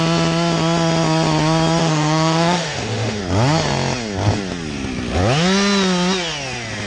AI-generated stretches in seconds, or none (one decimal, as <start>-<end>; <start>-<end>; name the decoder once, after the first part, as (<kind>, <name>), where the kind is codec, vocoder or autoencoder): 1.8-3.2 (autoencoder, DAC-VAE)